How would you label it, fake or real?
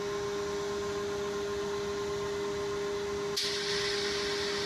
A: real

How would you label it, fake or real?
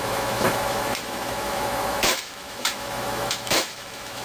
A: fake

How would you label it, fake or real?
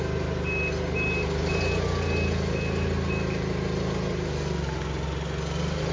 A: real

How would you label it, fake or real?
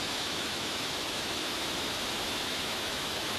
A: fake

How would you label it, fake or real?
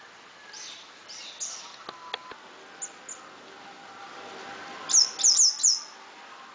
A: real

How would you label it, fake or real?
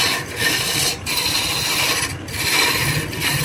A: real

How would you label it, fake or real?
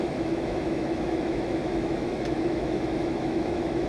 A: fake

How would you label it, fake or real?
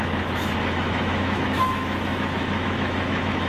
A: fake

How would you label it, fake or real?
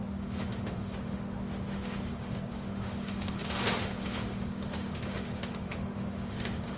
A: fake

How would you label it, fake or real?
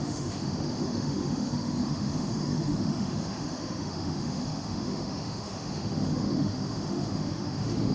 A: fake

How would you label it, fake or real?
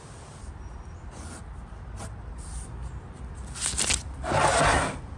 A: real